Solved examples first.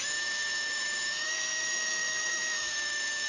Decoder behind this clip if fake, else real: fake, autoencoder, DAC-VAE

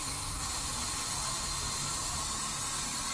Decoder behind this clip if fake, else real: real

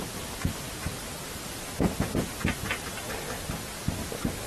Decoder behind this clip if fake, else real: real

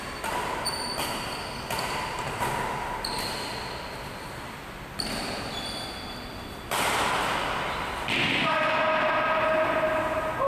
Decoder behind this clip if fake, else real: real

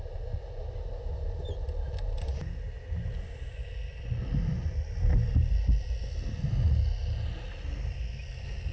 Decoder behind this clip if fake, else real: real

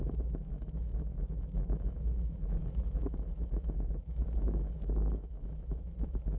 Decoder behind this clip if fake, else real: fake, autoencoder, DAC-VAE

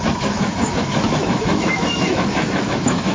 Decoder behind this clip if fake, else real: fake, autoencoder, DAC-VAE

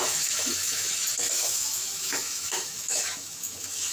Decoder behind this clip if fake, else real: fake, autoencoder, DAC-VAE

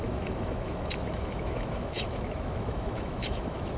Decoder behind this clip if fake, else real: fake, autoencoder, DAC-VAE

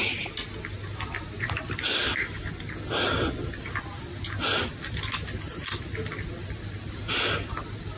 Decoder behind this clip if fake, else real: real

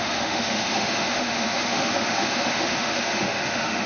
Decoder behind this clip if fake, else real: fake, autoencoder, DAC-VAE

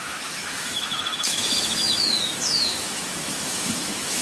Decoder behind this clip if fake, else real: fake, autoencoder, DAC-VAE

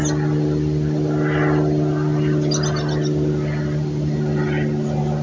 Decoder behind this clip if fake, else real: real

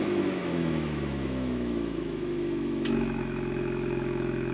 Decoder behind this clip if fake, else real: fake, autoencoder, DAC-VAE